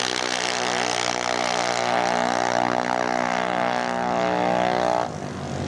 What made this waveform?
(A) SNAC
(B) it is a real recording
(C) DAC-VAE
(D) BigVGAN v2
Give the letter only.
B